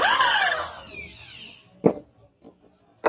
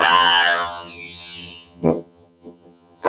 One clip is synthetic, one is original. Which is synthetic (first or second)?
second